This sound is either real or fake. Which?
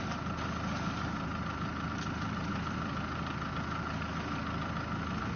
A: real